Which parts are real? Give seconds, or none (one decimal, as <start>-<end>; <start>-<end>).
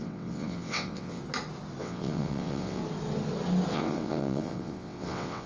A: 1.2-1.8; 2.8-3.7